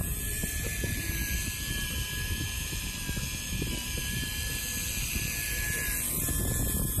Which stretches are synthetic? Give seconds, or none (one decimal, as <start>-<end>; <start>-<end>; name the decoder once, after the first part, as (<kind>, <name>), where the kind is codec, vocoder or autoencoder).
none